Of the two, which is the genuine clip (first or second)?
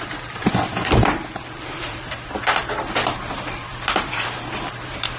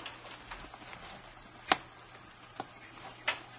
second